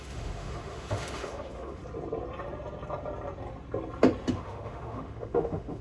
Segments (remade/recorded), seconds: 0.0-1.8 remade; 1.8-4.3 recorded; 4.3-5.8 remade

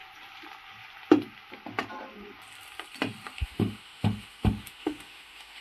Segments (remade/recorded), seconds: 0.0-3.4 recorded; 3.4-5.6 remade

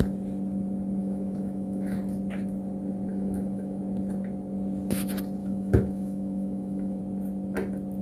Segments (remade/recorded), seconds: 0.0-1.0 recorded; 1.0-2.0 remade; 2.0-3.1 recorded; 3.1-3.8 remade; 3.8-5.4 recorded; 5.4-7.0 remade; 7.0-8.0 recorded

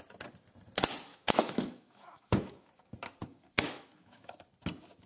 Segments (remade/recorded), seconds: 0.0-1.1 recorded; 1.1-2.7 remade; 2.7-3.2 recorded; 3.2-4.4 remade; 4.4-5.1 recorded